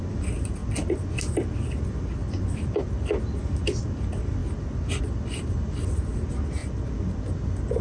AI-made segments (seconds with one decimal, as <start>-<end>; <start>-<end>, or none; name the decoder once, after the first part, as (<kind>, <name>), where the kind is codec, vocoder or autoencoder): none